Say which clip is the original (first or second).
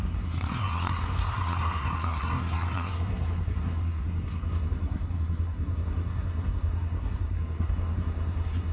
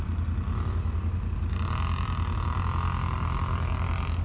second